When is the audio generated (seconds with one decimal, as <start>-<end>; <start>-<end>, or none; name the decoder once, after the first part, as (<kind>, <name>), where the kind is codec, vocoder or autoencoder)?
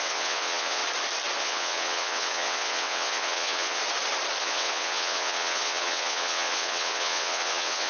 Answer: 0.0-0.8 (vocoder, WaveNeXt); 1.4-3.8; 4.4-7.9